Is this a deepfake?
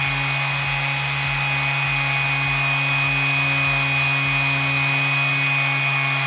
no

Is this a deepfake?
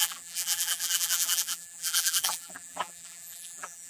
yes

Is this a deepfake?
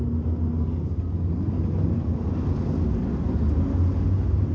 no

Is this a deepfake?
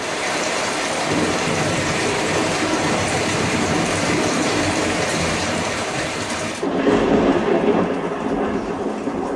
yes